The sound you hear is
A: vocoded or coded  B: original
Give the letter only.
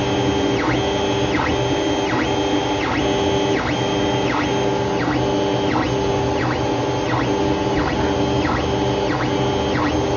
B